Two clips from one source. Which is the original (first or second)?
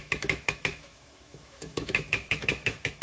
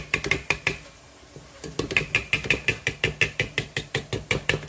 second